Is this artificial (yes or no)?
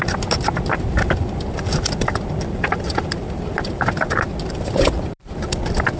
yes